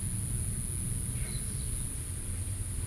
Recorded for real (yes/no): yes